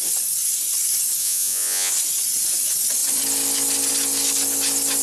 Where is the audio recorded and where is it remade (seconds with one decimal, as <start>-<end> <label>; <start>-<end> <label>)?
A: 0.0-1.2 recorded; 1.2-1.9 remade; 1.9-5.0 recorded